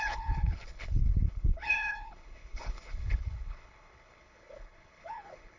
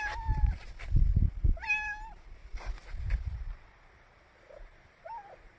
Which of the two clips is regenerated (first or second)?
first